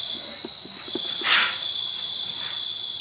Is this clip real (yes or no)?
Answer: yes